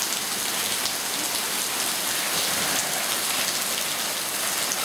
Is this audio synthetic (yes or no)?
no